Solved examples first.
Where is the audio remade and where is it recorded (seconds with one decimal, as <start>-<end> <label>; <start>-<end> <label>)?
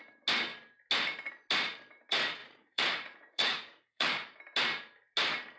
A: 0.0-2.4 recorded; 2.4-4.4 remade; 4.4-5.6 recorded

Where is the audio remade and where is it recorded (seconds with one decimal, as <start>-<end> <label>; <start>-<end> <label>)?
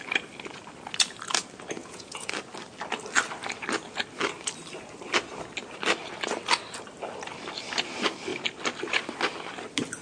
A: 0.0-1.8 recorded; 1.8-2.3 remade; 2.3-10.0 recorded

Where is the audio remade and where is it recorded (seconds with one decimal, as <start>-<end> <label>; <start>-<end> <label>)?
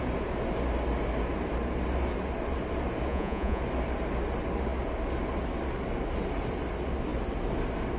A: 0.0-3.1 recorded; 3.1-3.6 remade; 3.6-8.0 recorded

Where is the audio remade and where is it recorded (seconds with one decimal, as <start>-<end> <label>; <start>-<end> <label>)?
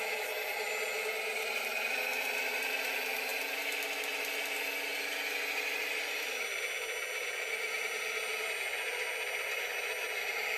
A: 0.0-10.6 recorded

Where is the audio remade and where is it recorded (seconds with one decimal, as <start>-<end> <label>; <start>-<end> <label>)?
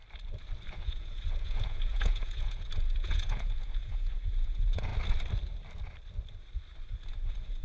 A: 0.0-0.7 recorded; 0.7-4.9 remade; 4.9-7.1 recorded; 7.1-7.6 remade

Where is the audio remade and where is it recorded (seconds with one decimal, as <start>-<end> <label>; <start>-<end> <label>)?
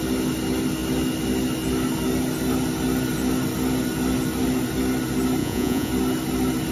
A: 0.0-5.4 recorded; 5.4-5.9 remade; 5.9-6.7 recorded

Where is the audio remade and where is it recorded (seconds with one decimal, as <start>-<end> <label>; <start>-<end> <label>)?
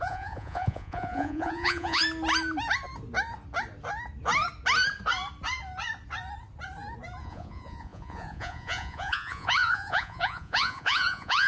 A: 0.0-2.0 remade; 2.0-7.2 recorded; 7.2-11.5 remade